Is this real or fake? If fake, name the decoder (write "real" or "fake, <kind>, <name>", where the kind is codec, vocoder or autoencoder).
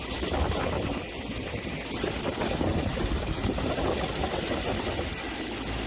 real